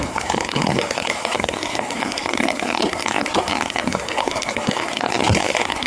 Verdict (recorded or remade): remade